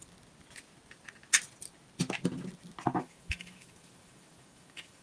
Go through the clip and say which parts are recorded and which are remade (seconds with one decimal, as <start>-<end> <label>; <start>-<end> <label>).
0.0-3.0 recorded; 3.0-5.0 remade